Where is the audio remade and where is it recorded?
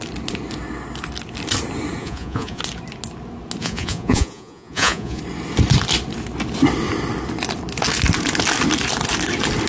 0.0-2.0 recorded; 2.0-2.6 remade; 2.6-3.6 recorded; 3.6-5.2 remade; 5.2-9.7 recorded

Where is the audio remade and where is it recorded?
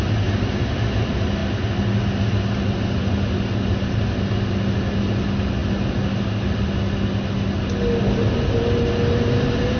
0.0-9.8 recorded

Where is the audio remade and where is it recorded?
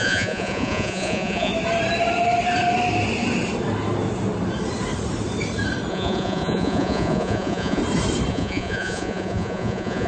0.0-1.5 remade; 1.5-5.9 recorded; 5.9-7.8 remade; 7.8-8.3 recorded; 8.3-10.1 remade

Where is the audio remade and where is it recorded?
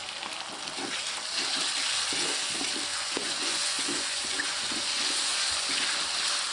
0.0-2.9 recorded; 2.9-5.7 remade; 5.7-6.5 recorded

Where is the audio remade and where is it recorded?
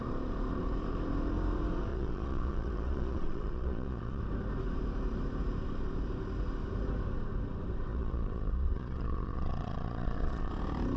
0.0-1.9 recorded; 1.9-4.2 remade; 4.2-7.9 recorded; 7.9-10.5 remade; 10.5-11.0 recorded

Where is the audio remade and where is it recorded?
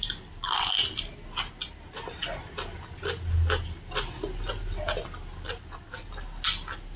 0.0-7.0 recorded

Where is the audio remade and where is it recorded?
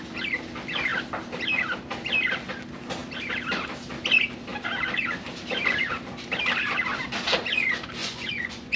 0.0-8.0 recorded; 8.0-8.8 remade